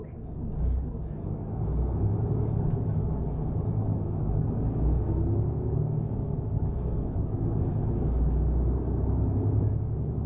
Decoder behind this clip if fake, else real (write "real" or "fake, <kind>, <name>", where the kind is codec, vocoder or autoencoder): fake, codec, DAC